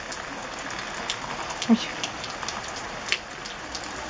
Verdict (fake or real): real